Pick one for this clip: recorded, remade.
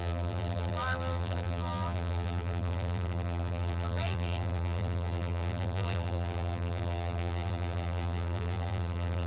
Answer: remade